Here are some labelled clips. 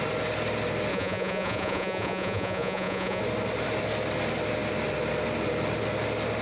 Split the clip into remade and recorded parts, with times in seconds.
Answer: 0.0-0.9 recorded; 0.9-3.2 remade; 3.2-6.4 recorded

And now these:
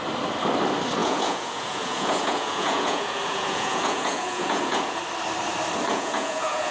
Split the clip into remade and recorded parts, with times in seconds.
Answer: 0.0-1.0 recorded; 1.0-5.0 remade; 5.0-5.9 recorded; 5.9-6.7 remade

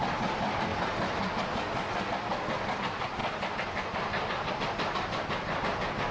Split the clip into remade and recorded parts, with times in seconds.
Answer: 0.0-6.1 recorded

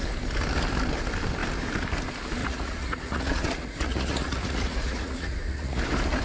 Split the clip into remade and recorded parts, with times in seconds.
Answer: 0.0-2.4 recorded; 2.4-5.8 remade; 5.8-6.2 recorded

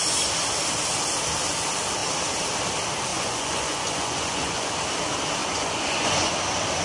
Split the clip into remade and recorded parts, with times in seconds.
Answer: 0.0-3.1 recorded; 3.1-4.7 remade; 4.7-5.4 recorded; 5.4-6.3 remade; 6.3-6.8 recorded

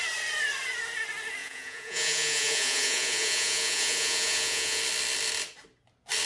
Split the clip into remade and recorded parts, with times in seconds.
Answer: 0.0-1.4 recorded; 1.4-4.8 remade; 4.8-6.3 recorded